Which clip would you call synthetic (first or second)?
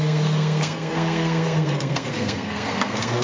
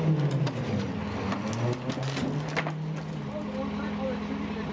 first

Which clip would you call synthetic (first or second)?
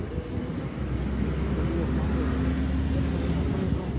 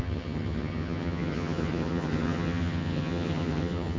second